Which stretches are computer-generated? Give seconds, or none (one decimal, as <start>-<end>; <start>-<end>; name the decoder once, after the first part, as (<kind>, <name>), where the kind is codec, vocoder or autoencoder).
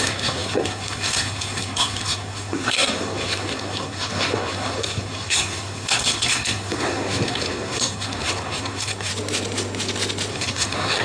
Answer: 0.0-9.1 (codec, SNAC); 10.3-11.0